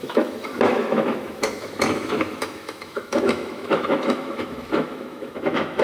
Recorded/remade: remade